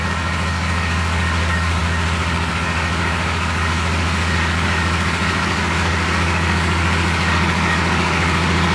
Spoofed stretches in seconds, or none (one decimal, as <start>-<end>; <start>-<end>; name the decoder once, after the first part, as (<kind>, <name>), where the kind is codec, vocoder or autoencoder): 0.0-8.7 (codec, DAC)